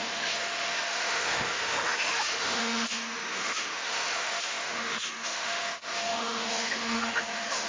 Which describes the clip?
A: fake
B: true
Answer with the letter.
A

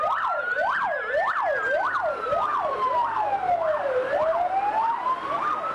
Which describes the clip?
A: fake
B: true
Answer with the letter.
B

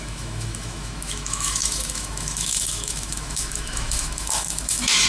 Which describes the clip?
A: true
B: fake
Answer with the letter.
B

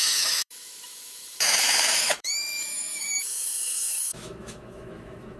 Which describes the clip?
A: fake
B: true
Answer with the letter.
A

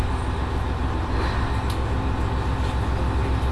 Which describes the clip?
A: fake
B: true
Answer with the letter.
B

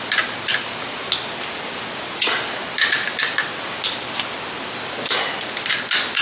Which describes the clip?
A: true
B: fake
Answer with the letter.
A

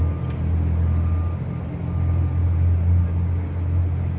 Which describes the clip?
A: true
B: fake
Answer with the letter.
A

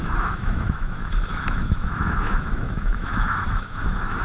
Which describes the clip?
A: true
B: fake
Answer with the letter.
B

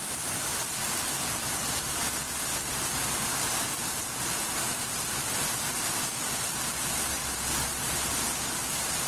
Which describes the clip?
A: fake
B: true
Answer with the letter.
B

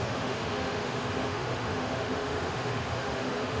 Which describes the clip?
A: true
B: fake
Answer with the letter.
B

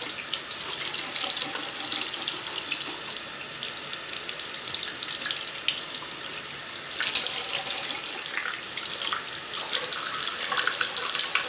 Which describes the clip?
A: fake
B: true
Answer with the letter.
B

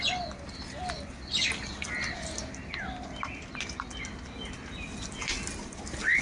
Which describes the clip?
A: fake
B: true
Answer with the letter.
B